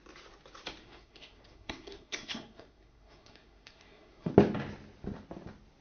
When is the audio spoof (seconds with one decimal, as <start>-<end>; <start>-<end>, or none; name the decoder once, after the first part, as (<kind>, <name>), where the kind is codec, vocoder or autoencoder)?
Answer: 0.8-4.3 (codec, SNAC)